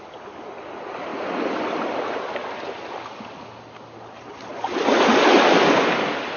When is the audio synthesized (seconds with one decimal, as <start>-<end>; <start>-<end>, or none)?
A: 1.1-2.8